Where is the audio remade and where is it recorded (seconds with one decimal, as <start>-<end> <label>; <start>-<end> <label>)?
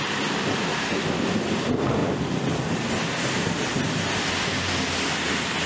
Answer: 0.0-5.7 recorded